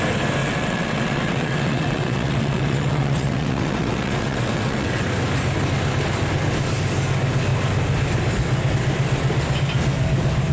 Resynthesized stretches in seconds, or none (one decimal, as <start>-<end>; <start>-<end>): 0.4-5.0